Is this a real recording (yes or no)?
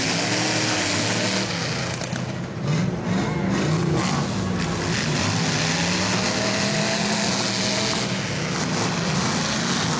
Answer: yes